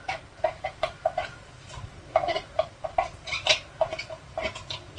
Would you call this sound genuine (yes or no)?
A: yes